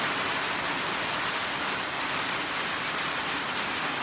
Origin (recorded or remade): recorded